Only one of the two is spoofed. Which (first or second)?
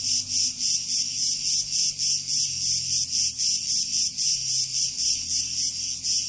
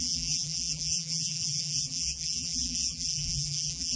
second